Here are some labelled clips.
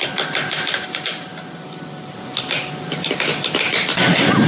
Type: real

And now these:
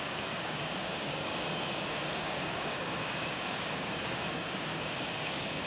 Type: fake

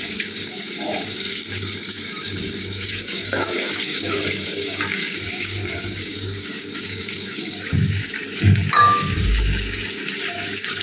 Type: fake